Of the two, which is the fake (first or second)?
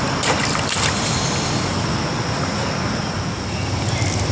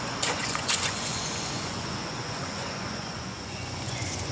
second